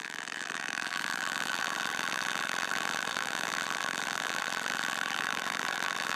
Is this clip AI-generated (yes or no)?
yes